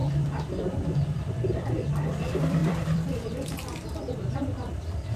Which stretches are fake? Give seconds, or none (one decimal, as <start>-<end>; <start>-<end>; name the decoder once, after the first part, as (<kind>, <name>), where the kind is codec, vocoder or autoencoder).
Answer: 0.0-5.2 (vocoder, BigVGAN v2)